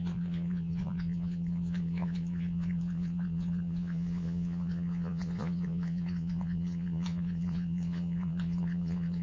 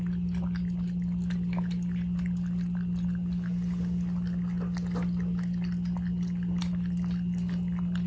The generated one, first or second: first